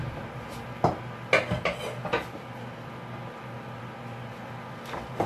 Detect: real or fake real